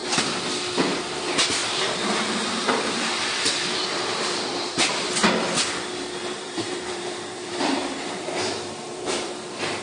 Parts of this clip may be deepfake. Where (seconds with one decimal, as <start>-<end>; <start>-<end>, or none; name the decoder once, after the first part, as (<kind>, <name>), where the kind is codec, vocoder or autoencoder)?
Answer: 1.6-5.1 (vocoder, BigVGAN v2); 6.2-9.8